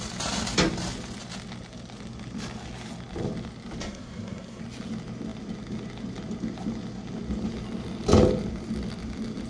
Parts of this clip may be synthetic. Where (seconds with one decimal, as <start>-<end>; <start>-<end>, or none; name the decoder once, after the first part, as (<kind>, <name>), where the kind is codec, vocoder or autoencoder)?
3.8-4.6 (codec, SNAC)